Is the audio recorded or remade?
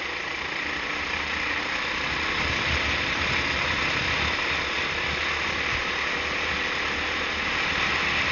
recorded